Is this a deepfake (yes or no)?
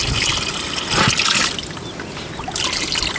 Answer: no